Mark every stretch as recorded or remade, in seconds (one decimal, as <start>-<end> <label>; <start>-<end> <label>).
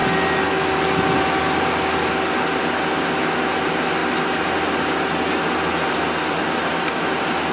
0.0-7.5 recorded